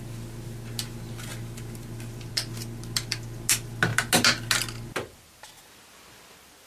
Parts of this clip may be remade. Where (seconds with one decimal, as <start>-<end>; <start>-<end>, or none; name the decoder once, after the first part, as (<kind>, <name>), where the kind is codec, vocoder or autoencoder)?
none